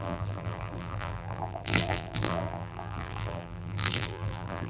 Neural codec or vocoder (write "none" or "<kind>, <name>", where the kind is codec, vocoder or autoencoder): vocoder, BigVGAN v2